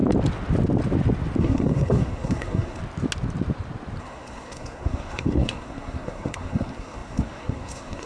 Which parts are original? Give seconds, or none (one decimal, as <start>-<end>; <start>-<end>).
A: 0.0-1.4; 2.8-4.0